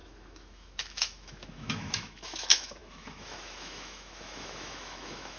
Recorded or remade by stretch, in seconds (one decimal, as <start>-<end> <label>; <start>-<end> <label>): 0.0-5.4 remade